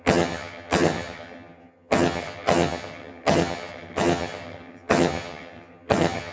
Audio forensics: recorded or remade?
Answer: remade